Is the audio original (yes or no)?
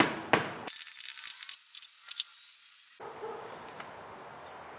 yes